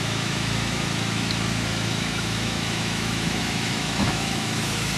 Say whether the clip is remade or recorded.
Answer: remade